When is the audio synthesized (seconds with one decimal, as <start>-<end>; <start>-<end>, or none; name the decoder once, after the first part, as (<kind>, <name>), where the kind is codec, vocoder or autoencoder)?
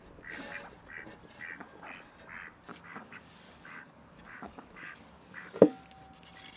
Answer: 2.7-5.8 (codec, DAC)